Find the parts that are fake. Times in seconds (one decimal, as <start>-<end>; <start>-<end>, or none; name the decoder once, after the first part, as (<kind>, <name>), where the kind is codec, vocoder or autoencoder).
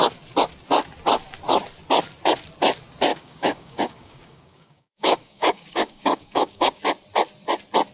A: 3.1-6.8 (codec, DAC)